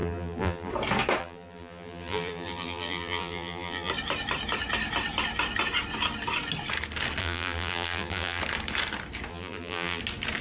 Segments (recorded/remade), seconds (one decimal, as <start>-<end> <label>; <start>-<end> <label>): 0.0-0.7 remade; 0.7-1.2 recorded; 1.2-3.9 remade; 3.9-7.2 recorded; 7.2-8.4 remade; 8.4-9.3 recorded; 9.3-10.0 remade; 10.0-10.4 recorded